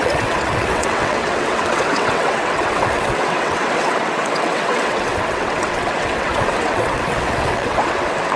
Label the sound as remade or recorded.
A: remade